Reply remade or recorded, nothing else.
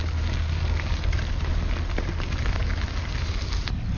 recorded